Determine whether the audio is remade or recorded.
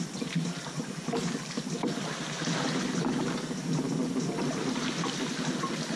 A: recorded